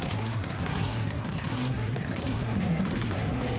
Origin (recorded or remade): remade